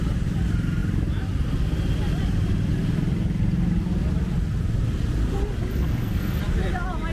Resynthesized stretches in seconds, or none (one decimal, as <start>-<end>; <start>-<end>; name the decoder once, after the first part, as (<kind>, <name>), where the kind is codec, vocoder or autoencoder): 5.7-6.4 (codec, SNAC)